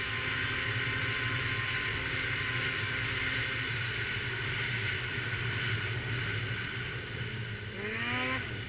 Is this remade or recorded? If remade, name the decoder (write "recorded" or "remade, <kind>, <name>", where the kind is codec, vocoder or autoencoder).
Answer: recorded